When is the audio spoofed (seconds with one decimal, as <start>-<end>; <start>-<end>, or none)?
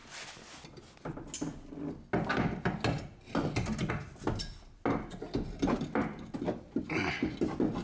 none